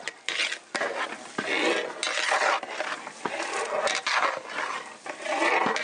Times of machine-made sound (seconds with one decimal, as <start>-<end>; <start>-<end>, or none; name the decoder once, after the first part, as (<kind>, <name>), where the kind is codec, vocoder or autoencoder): none